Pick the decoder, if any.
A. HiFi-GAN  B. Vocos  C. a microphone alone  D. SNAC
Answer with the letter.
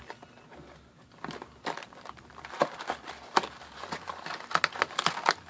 C